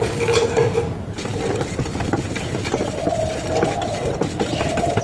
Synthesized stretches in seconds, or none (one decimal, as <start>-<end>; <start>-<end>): none